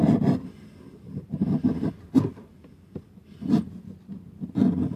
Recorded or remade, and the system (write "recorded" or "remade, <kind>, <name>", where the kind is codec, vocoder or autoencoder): recorded